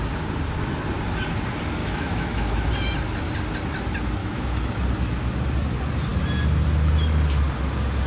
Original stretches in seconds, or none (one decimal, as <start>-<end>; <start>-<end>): 0.0-1.8; 2.7-4.2; 4.8-8.1

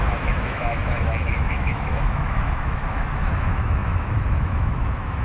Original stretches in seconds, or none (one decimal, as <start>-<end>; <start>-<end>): none

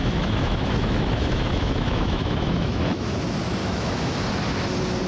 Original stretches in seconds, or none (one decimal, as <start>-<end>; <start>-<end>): 3.1-3.6; 4.1-5.1

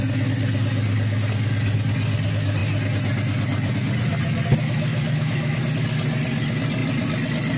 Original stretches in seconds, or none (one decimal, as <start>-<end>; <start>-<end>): 0.0-4.9; 5.6-7.6

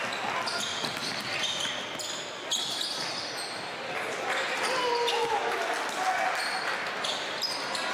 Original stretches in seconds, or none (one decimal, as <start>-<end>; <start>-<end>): 0.0-7.9

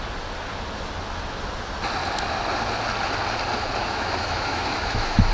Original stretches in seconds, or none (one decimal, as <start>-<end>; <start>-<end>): 0.0-3.8

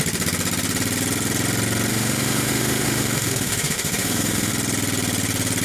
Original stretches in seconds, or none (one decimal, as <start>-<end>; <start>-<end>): 0.0-1.9; 4.5-5.6

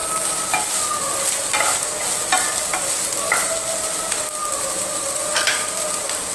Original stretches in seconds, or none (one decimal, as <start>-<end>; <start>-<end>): 0.0-6.3